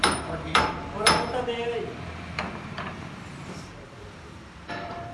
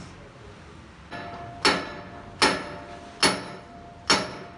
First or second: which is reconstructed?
first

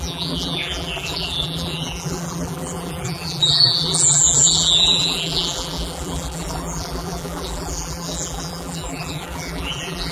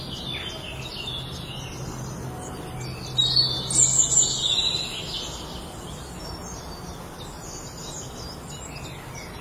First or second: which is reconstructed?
first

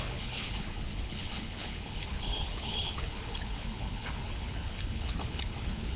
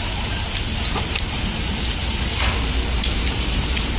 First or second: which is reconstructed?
first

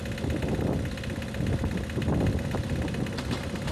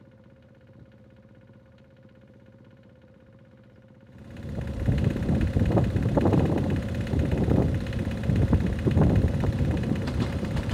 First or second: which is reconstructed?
second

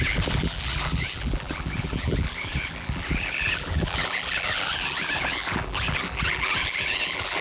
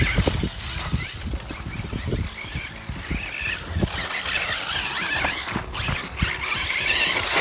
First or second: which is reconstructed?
first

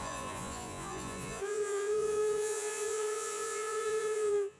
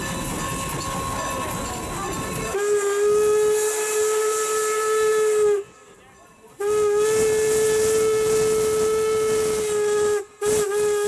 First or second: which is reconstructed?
first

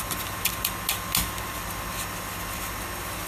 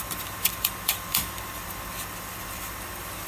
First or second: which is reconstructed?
second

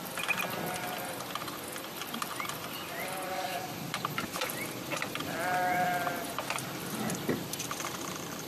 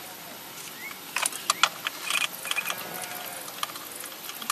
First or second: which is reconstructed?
first